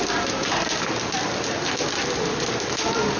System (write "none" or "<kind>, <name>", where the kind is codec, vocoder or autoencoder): none